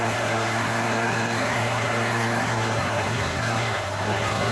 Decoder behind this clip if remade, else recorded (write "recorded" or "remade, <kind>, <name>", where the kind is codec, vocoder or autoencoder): remade, codec, SNAC